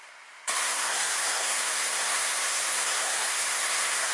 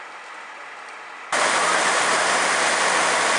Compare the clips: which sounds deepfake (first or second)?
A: first